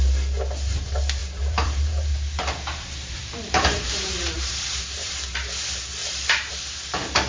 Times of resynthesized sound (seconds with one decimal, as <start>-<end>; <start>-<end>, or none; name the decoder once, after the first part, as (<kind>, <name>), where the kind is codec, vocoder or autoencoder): 1.2-5.2 (vocoder, BigVGAN v2); 6.0-6.5